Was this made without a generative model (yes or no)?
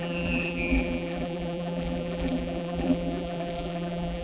no